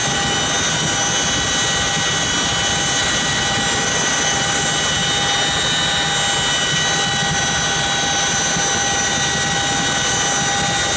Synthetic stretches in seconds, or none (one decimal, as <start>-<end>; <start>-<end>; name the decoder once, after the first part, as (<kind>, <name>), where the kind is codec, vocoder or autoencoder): 3.0-4.6 (vocoder, BigVGAN v2)